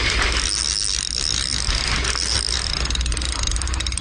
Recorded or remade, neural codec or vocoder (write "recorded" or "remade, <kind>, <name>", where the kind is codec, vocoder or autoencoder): recorded